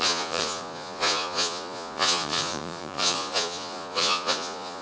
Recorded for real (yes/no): no